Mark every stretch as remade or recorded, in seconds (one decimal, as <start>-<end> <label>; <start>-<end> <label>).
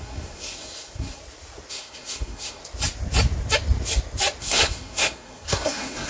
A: 0.0-1.2 remade; 1.2-1.7 recorded; 1.7-2.6 remade; 2.6-4.4 recorded; 4.4-6.1 remade